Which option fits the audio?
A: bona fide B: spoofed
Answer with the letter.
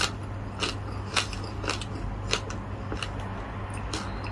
A